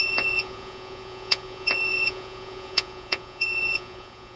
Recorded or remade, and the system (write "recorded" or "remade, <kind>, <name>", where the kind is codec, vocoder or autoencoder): remade, vocoder, Vocos